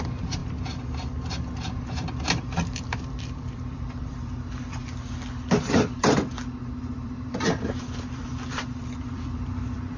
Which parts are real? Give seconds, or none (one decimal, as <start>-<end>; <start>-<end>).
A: 0.4-1.3; 4.8-6.9

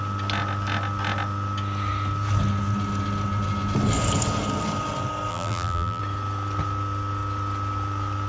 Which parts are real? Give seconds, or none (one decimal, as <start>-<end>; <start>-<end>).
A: 0.0-5.3; 6.0-8.3

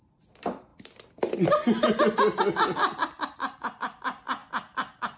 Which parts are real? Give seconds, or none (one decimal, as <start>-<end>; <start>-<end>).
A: 0.7-3.8; 4.4-5.2